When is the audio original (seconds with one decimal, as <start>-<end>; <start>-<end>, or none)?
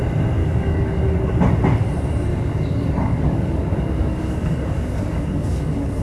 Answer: 0.0-0.4; 1.4-2.3